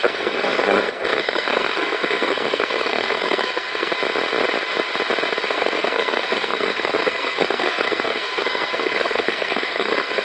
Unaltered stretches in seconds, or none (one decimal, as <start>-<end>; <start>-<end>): 3.9-5.5